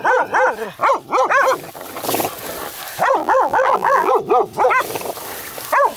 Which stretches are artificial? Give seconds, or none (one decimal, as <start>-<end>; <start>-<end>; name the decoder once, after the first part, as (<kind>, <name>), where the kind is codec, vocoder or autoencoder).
3.2-4.1 (vocoder, BigVGAN v2)